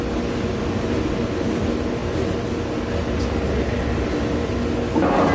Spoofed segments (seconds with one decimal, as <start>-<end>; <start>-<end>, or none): none